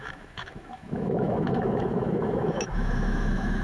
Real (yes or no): no